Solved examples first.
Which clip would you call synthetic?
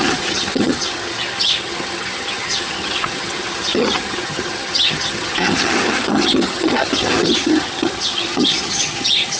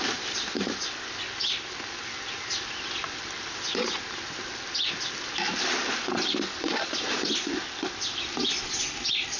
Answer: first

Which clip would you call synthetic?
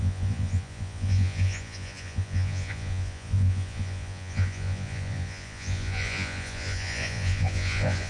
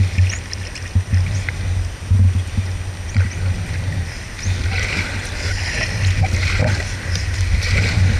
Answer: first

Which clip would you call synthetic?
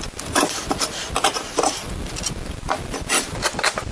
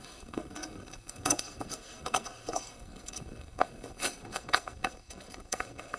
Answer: second